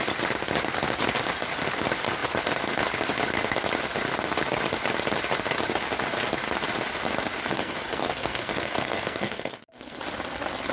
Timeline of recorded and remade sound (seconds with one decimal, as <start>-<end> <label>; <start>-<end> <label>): 0.0-7.5 recorded; 7.5-10.0 remade; 10.0-10.7 recorded